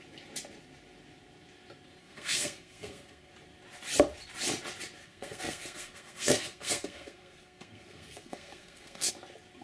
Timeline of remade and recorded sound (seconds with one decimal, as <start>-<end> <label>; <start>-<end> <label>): 0.0-2.0 recorded; 2.0-3.3 remade; 3.3-5.0 recorded; 5.0-9.1 remade; 9.1-9.6 recorded